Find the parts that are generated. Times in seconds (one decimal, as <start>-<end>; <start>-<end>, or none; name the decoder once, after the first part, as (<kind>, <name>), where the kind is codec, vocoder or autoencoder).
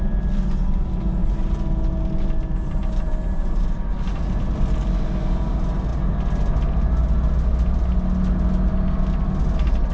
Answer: none